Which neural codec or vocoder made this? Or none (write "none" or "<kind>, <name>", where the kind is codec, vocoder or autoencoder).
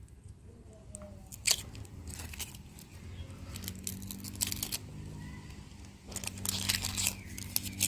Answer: none